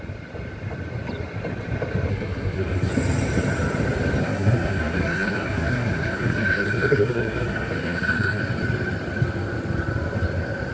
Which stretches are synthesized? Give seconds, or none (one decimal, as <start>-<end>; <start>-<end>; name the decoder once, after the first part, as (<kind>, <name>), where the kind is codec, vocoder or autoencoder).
2.1-2.9 (codec, SNAC); 4.2-8.4